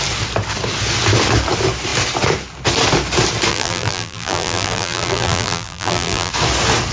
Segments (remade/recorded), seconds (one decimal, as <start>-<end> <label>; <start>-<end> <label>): 0.0-3.5 recorded; 3.5-6.3 remade; 6.3-6.9 recorded